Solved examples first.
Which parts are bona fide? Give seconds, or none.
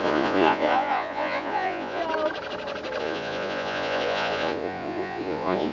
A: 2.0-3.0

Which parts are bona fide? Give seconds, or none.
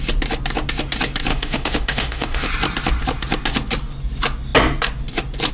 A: 0.0-1.3; 2.5-5.5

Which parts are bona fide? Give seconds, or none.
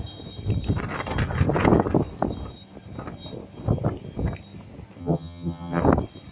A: 0.0-5.0; 5.8-6.3